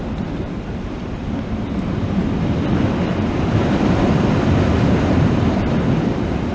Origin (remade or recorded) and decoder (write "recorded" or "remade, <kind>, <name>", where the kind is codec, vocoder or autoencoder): remade, vocoder, BigVGAN v2